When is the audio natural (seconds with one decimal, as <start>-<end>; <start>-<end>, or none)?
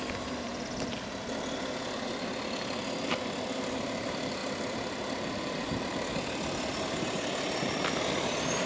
0.5-1.5